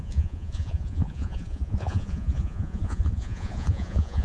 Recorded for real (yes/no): no